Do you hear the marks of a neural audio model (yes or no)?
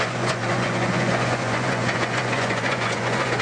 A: yes